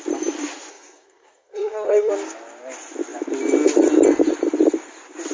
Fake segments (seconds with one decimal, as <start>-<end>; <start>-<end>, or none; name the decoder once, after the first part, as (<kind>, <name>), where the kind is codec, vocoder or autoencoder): 0.7-2.1 (codec, SNAC)